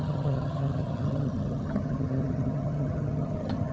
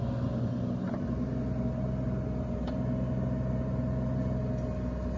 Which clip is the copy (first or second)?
first